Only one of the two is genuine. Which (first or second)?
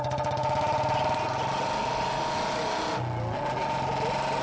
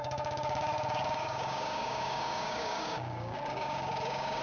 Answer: first